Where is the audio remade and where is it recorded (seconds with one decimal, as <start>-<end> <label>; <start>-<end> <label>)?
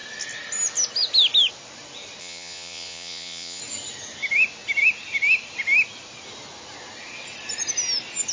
0.0-2.2 recorded; 2.2-3.6 remade; 3.6-8.3 recorded